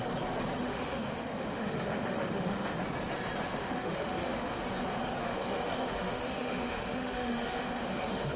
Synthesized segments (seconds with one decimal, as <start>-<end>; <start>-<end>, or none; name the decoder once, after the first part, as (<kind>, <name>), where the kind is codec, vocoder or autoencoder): 0.6-2.8 (autoencoder, DAC-VAE); 3.6-4.6; 5.2-8.4